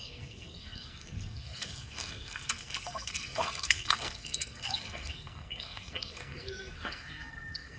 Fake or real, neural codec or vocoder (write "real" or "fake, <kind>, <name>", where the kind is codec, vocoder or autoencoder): fake, codec, SNAC